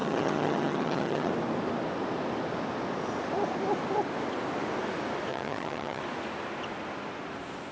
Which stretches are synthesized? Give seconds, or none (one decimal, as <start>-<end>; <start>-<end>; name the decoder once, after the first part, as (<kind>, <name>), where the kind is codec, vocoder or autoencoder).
0.0-1.3 (vocoder, HiFi-GAN); 5.3-6.0